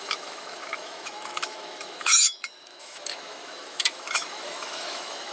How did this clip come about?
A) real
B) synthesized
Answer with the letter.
B